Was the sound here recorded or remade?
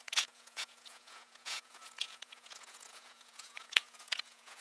remade